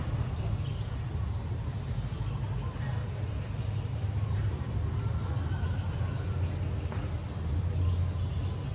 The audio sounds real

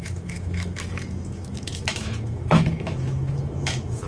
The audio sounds fake